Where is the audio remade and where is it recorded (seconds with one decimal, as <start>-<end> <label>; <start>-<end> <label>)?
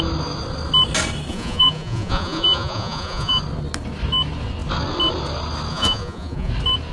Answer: 0.0-1.3 recorded; 1.3-3.4 remade; 3.4-5.7 recorded; 5.7-6.5 remade; 6.5-6.9 recorded